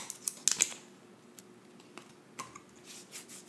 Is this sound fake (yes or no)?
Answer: no